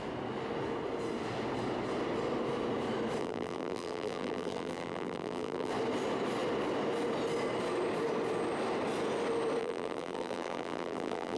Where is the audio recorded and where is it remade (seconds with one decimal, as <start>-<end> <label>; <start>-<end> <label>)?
0.0-3.2 recorded; 3.2-5.7 remade; 5.7-9.6 recorded; 9.6-11.4 remade

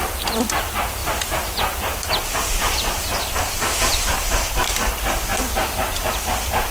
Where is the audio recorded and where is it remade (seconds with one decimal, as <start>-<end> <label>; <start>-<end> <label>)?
0.0-5.3 remade; 5.3-6.7 recorded

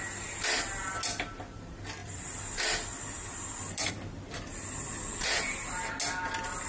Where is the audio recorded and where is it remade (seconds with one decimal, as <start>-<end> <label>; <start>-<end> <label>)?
0.0-2.0 recorded; 2.0-3.9 remade; 3.9-6.7 recorded

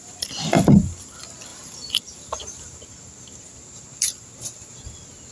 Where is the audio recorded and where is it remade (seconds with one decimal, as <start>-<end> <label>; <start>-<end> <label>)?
0.0-1.5 recorded; 1.5-4.7 remade; 4.7-5.3 recorded

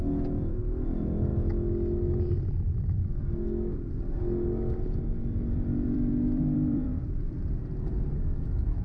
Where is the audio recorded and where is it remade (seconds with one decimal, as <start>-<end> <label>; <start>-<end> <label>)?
0.0-5.1 recorded; 5.1-7.4 remade; 7.4-8.8 recorded

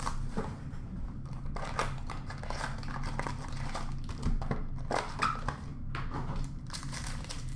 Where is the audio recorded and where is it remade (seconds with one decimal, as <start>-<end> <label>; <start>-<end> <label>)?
0.0-1.8 remade; 1.8-5.3 recorded; 5.3-5.7 remade; 5.7-6.6 recorded; 6.6-7.6 remade

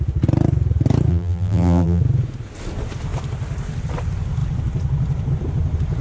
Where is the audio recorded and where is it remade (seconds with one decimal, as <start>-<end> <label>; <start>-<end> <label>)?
0.0-1.1 recorded; 1.1-2.0 remade; 2.0-6.0 recorded